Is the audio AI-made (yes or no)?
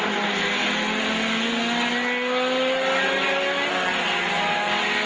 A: no